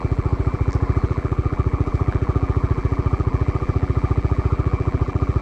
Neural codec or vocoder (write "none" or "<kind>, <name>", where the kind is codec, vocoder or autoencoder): vocoder, BigVGAN v2